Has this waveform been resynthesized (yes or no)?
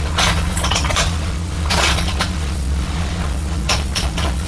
yes